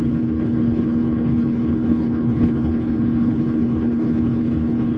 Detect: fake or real fake